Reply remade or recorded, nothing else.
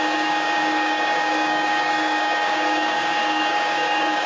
remade